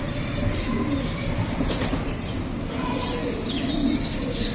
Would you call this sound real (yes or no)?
no